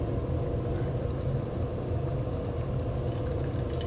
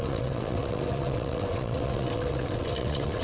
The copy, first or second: second